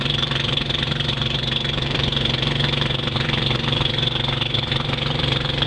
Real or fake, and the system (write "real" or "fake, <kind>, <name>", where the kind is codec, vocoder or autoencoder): fake, vocoder, BigVGAN v2